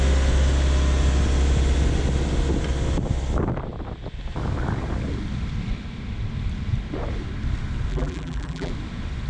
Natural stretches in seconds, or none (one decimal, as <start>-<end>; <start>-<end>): 0.0-7.9; 8.7-9.3